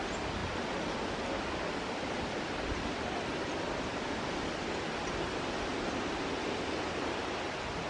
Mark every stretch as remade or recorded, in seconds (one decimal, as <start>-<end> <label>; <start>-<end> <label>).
0.0-0.4 recorded; 0.4-4.5 remade; 4.5-5.7 recorded; 5.7-7.9 remade